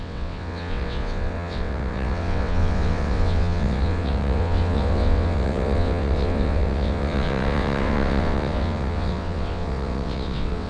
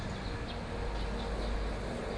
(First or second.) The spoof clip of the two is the first